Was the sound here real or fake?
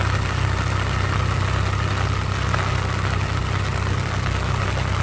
real